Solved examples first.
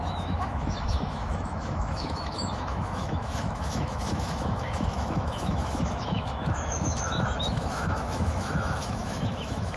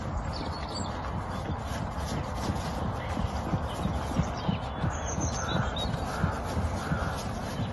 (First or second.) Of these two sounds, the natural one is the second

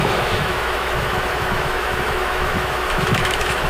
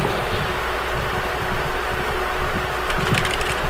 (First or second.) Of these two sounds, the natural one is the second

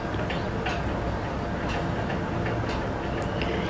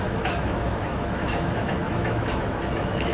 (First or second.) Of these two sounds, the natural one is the first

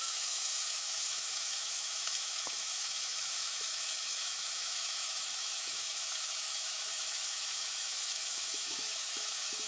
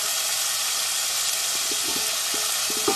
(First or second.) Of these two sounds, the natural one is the second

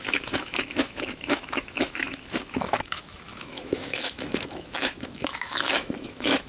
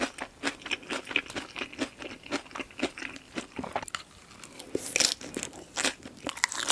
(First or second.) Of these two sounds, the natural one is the second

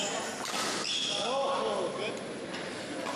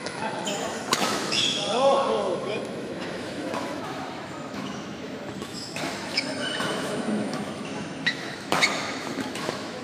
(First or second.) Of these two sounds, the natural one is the first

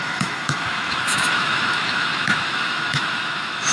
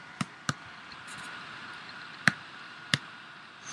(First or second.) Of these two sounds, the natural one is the second